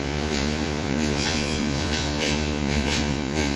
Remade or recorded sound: remade